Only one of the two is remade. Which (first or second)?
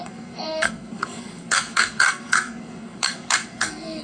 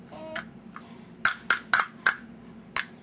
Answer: first